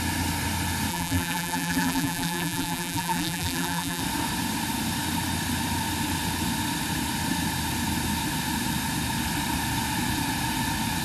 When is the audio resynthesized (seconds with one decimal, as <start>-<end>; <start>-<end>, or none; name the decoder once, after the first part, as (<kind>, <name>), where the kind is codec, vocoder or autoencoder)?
0.9-4.0 (vocoder, BigVGAN v2)